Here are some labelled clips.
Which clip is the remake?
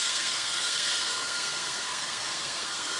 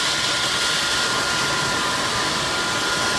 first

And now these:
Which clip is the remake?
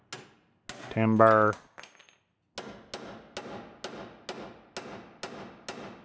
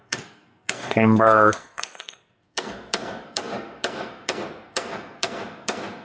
second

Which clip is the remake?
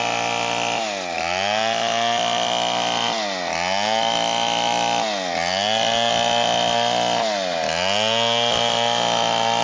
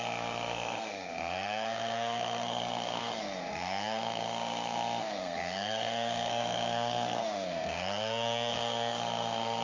second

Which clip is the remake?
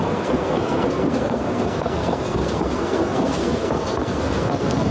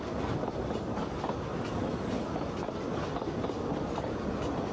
first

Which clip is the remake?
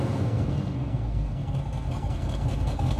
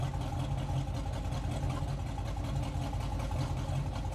first